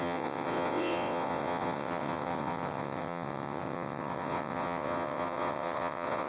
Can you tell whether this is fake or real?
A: fake